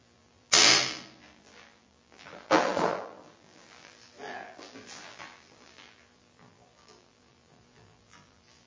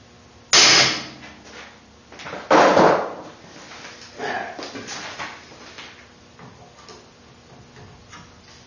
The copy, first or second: first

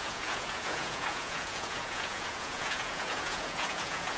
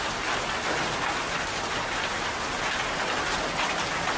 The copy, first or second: first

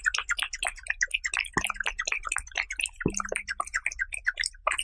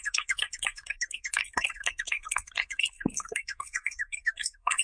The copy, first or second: second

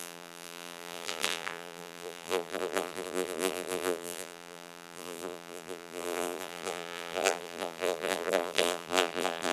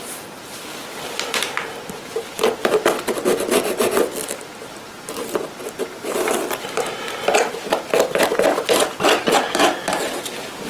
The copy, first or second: first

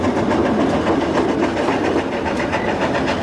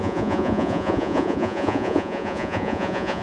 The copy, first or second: second